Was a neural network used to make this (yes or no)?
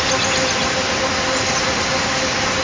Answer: no